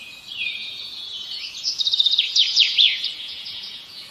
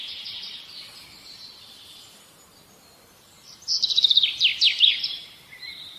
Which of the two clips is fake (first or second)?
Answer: first